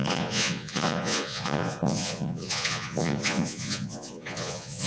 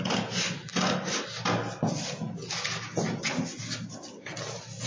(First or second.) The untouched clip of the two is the second